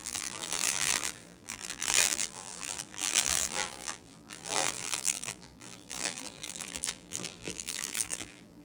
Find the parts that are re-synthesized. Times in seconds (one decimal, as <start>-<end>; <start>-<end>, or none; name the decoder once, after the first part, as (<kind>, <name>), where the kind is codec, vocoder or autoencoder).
0.0-8.6 (vocoder, BigVGAN v2)